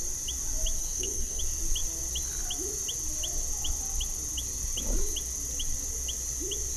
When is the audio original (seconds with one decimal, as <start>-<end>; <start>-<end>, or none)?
0.0-0.8; 1.4-6.8